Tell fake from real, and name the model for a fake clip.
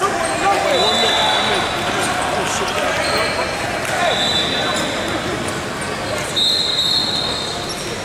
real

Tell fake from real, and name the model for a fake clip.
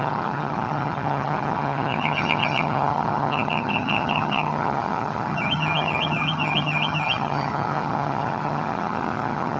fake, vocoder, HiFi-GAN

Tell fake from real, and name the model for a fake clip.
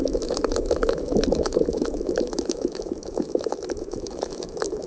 fake, autoencoder, DAC-VAE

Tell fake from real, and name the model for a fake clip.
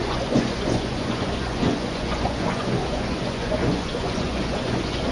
fake, vocoder, Vocos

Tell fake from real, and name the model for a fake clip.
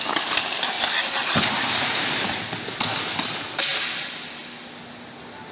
real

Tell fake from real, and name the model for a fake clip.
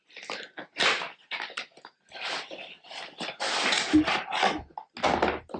real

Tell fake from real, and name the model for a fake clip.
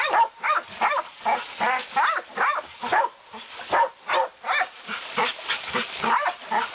real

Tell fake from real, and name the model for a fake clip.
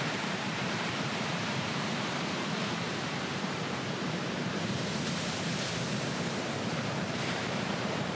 fake, vocoder, BigVGAN v2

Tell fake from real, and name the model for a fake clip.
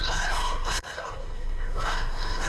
fake, codec, SNAC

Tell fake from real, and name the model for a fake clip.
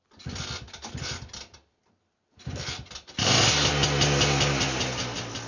real